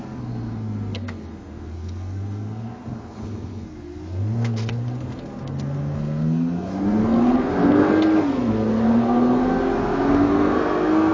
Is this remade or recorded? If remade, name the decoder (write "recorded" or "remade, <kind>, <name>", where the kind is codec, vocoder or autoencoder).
remade, codec, SNAC